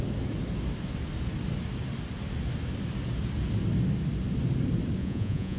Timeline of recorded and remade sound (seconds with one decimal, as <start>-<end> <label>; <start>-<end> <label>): 0.0-5.0 recorded; 5.0-5.6 remade